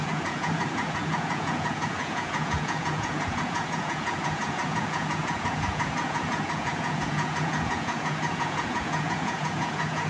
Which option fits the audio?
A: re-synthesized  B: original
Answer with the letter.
A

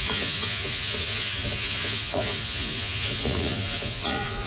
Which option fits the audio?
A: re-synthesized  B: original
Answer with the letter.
A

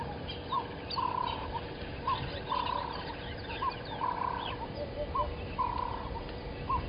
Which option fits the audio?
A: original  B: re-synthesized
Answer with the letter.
A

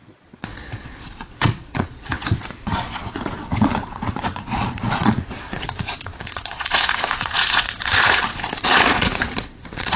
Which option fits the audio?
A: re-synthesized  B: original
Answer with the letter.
A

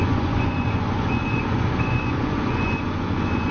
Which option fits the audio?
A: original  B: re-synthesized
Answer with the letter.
B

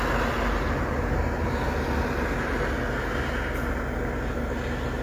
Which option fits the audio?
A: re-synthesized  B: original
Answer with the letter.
B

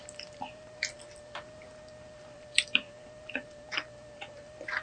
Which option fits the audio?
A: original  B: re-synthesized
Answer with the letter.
A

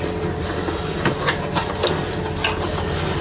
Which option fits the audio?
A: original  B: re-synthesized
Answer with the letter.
A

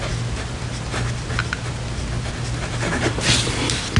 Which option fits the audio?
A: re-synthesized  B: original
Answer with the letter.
B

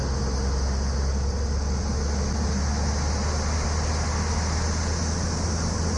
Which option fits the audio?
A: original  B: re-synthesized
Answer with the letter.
A